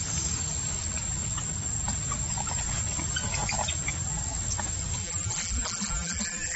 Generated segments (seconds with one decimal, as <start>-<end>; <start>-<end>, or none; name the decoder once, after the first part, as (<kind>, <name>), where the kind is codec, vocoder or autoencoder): 5.0-6.6 (vocoder, BigVGAN v2)